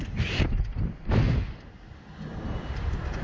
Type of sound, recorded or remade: recorded